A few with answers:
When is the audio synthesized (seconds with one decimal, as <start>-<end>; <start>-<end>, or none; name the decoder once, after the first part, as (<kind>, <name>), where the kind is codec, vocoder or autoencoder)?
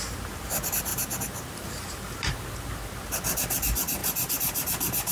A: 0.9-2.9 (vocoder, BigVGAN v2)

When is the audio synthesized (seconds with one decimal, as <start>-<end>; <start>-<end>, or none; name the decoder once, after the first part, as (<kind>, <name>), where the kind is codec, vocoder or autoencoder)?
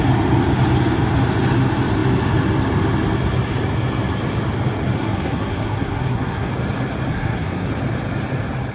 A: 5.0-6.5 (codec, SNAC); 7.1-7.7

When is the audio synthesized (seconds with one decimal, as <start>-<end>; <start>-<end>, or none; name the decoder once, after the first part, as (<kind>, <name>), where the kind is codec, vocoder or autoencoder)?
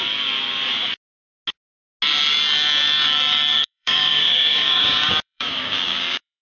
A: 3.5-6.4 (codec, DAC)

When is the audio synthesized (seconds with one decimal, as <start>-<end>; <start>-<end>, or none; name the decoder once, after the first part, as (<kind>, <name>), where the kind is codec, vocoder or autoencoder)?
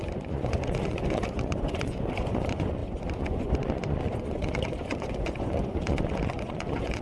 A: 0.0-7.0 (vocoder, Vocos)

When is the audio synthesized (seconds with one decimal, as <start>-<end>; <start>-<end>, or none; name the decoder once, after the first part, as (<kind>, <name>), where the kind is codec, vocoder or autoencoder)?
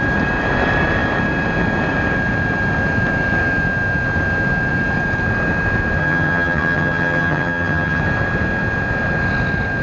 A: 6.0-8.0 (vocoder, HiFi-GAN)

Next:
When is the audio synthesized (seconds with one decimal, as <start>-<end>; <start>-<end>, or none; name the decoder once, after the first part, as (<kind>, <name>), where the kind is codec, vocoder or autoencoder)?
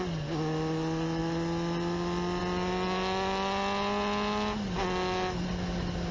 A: none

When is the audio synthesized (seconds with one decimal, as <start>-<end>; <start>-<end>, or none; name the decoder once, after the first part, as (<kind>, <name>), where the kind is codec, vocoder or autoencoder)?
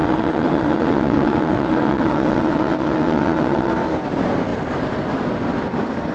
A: 0.0-3.7 (vocoder, WaveNeXt)